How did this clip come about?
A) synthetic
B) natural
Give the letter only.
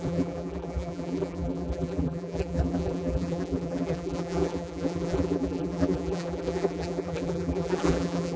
A